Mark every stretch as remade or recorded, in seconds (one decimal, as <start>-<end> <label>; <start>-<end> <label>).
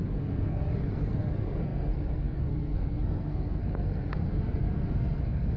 0.0-5.6 remade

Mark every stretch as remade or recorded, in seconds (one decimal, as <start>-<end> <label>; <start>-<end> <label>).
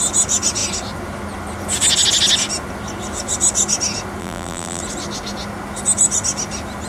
0.0-4.2 recorded; 4.2-4.8 remade; 4.8-6.9 recorded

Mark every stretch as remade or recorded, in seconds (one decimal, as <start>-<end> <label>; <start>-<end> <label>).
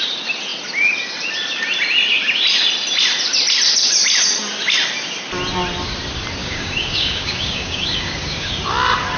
0.0-6.4 recorded; 6.4-8.5 remade; 8.5-9.2 recorded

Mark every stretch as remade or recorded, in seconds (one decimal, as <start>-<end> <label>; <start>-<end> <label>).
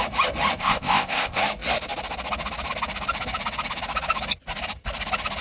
0.0-0.6 recorded; 0.6-1.4 remade; 1.4-5.4 recorded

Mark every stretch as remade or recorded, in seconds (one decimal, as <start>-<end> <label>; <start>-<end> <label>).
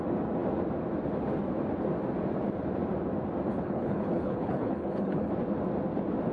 0.0-3.5 recorded; 3.5-5.3 remade; 5.3-6.3 recorded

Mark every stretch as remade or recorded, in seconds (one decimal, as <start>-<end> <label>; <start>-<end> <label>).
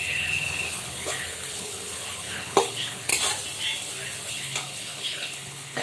0.0-3.1 remade; 3.1-4.3 recorded; 4.3-5.8 remade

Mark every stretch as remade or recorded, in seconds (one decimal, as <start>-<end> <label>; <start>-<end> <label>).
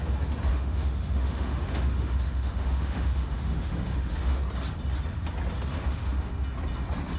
0.0-0.5 recorded; 0.5-4.4 remade; 4.4-5.7 recorded; 5.7-6.3 remade; 6.3-7.2 recorded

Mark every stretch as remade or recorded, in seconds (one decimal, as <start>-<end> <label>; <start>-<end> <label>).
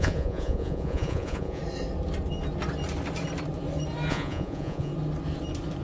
0.0-1.6 remade; 1.6-4.1 recorded; 4.1-4.9 remade; 4.9-5.8 recorded